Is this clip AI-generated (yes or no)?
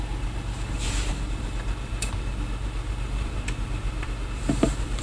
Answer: yes